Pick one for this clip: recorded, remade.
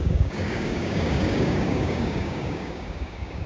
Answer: remade